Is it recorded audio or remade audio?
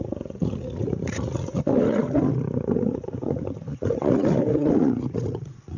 remade